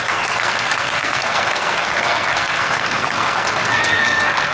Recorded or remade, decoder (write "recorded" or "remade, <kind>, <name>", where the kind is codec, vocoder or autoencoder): remade, codec, SNAC